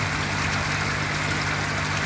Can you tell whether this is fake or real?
real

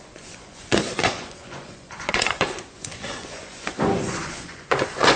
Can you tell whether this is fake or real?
fake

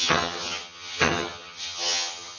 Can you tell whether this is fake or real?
fake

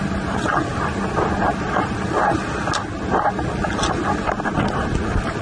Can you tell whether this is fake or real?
real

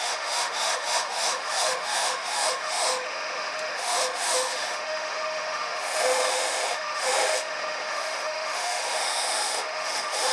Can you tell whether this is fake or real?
fake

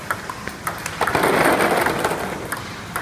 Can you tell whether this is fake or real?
real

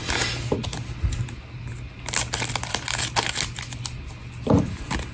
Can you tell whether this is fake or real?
real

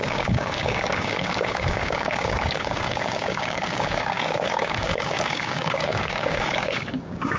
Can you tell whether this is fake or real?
fake